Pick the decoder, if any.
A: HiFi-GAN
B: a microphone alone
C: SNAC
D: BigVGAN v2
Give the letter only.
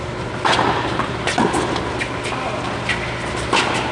B